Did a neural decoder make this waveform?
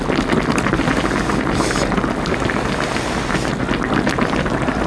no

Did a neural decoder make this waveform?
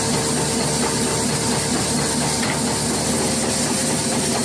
no